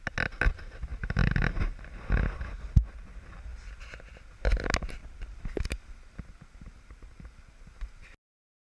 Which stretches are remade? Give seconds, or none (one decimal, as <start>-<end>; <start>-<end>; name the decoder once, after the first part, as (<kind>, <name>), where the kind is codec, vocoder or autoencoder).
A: none